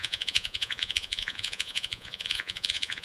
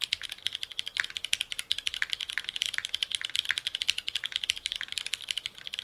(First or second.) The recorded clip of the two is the second